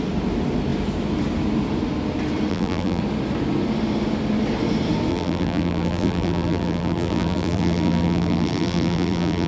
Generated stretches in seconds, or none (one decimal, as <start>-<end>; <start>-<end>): 2.5-3.0; 5.1-9.5